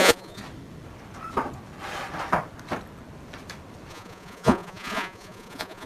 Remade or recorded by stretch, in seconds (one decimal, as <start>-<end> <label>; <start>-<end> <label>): 0.0-0.4 remade; 0.4-3.9 recorded; 3.9-5.9 remade